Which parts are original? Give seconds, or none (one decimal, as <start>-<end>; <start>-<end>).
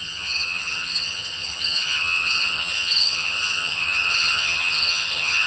none